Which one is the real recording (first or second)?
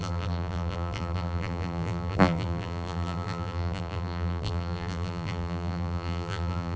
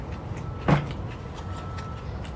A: second